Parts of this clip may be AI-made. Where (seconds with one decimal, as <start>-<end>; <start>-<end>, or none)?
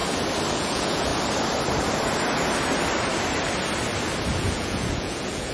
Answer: 0.5-1.1; 4.4-5.5